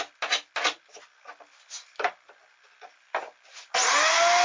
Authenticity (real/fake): real